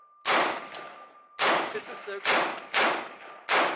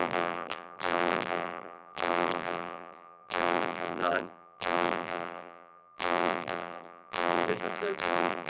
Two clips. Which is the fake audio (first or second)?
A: second